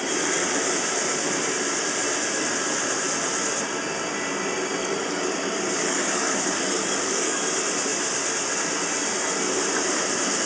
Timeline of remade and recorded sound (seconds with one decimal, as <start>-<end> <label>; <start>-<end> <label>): 0.0-4.8 recorded; 4.8-7.4 remade; 7.4-10.5 recorded